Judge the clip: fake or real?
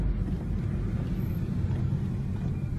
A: real